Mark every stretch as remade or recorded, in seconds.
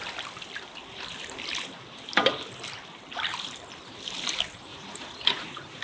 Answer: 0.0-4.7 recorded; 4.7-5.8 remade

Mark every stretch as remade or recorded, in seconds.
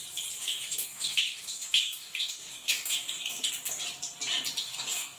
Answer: 0.0-0.4 recorded; 0.4-3.5 remade; 3.5-4.6 recorded; 4.6-5.2 remade